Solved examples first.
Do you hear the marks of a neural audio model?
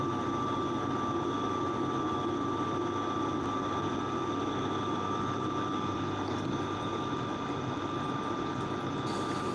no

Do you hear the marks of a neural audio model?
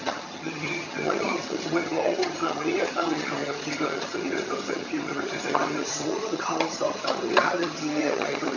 yes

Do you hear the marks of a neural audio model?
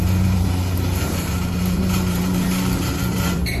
yes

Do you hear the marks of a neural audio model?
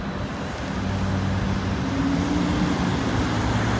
no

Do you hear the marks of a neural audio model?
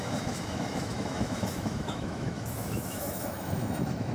yes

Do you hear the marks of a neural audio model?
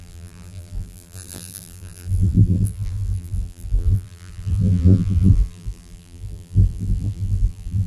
yes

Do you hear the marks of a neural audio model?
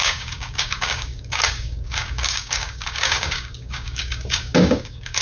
yes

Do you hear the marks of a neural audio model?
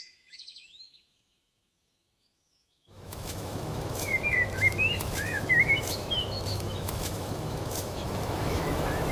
yes